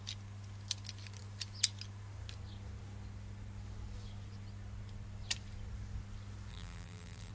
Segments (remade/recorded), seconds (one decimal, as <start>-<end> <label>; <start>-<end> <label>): 0.0-6.5 recorded; 6.5-7.3 remade